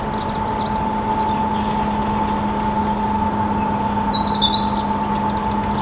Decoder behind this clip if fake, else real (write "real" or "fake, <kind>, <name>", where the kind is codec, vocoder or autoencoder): real